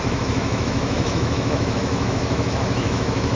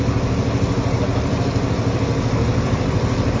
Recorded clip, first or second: second